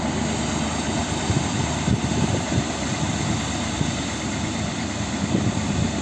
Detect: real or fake fake